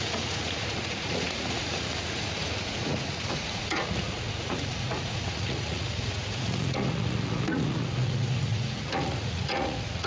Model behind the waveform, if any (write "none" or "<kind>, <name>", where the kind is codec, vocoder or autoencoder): vocoder, Vocos